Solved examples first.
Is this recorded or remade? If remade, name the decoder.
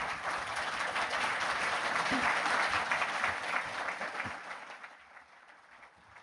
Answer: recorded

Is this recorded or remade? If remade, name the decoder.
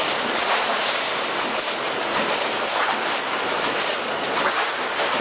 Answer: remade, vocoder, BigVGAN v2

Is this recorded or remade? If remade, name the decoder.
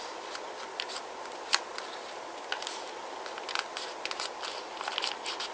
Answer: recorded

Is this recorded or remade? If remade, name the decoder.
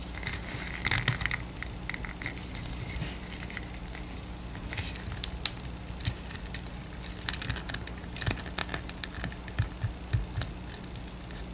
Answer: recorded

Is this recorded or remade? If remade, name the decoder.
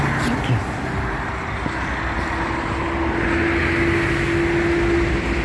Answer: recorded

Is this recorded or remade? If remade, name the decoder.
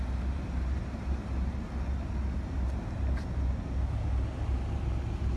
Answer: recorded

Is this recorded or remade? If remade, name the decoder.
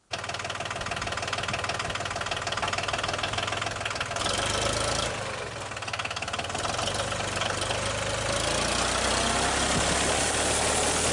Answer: recorded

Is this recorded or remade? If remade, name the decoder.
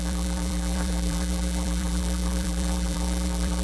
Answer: remade, vocoder, BigVGAN v2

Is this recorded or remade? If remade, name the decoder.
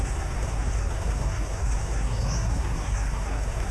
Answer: remade, codec, SNAC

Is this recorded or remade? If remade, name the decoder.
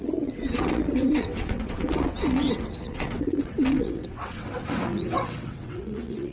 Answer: remade, vocoder, WaveNeXt